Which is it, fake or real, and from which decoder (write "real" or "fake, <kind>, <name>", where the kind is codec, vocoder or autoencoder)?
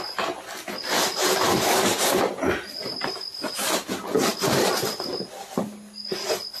real